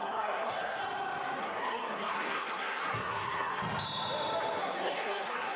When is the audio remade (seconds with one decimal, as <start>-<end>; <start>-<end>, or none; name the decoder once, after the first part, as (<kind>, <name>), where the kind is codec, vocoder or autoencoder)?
0.0-0.8 (codec, SNAC); 1.4-3.6; 4.6-5.6